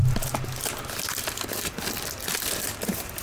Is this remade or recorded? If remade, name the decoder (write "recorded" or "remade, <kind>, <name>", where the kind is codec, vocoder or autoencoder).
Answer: recorded